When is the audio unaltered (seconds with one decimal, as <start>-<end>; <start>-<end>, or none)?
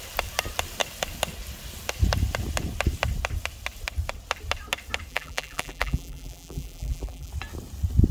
0.0-5.1; 7.3-8.1